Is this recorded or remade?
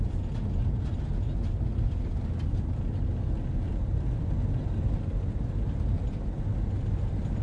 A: recorded